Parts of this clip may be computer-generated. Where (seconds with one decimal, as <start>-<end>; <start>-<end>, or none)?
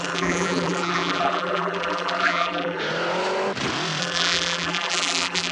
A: 0.0-2.8; 4.0-5.5